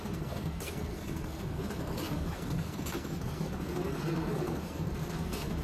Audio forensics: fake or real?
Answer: fake